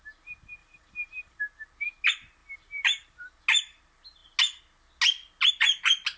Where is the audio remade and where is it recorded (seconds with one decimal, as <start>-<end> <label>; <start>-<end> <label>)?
0.0-0.6 recorded; 0.6-1.4 remade; 1.4-2.4 recorded; 2.4-3.4 remade; 3.4-6.2 recorded